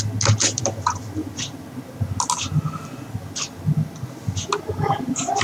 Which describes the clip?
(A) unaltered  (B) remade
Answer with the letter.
A